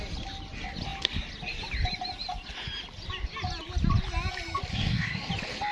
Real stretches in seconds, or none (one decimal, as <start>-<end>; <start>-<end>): 0.0-4.7; 5.3-5.7